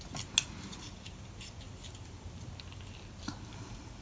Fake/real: real